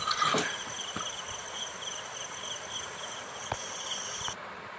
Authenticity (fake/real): real